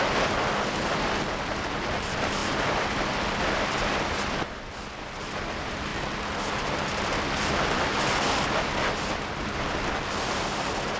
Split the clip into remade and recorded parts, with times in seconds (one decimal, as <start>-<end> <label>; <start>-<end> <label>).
0.0-11.0 recorded